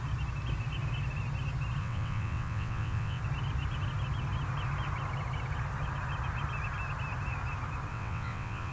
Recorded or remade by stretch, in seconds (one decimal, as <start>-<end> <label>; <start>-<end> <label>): 0.0-1.8 recorded; 1.8-3.2 remade; 3.2-7.9 recorded; 7.9-8.7 remade